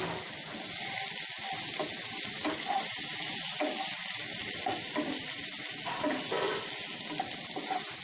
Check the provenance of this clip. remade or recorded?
recorded